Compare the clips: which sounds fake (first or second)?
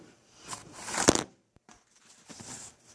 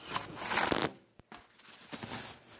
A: first